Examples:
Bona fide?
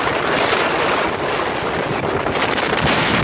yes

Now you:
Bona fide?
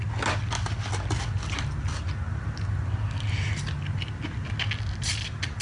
yes